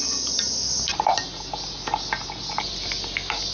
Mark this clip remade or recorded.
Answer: recorded